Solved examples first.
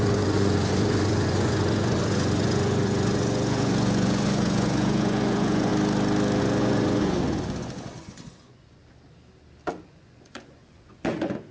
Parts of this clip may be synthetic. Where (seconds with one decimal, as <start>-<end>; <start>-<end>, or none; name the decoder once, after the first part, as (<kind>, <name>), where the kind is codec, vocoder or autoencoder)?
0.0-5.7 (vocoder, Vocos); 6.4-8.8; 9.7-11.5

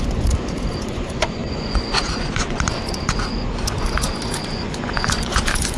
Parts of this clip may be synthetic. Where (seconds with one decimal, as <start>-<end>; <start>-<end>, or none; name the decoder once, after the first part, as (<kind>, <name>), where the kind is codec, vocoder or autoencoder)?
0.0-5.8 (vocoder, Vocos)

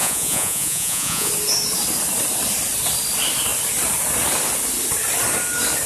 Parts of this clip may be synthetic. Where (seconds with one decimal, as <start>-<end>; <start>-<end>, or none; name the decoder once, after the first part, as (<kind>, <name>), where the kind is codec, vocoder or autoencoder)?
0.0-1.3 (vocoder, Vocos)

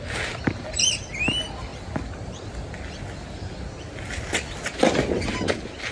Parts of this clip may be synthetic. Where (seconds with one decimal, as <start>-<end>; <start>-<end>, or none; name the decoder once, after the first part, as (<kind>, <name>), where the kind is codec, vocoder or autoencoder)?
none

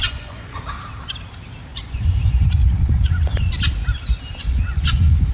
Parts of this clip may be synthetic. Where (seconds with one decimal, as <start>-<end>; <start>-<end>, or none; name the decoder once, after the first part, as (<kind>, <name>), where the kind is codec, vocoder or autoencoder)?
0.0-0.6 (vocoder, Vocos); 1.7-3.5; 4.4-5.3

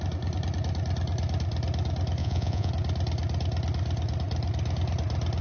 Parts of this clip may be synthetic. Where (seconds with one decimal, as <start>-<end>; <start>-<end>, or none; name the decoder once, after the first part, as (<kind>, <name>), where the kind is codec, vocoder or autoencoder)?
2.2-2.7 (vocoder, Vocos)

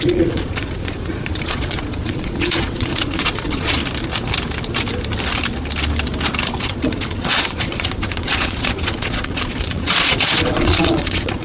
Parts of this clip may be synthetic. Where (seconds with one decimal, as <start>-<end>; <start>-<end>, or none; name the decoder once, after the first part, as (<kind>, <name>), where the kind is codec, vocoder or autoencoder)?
0.0-3.8 (vocoder, Vocos); 6.6-11.4